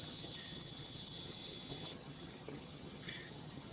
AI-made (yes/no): yes